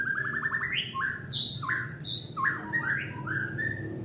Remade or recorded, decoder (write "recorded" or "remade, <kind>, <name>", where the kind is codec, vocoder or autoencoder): recorded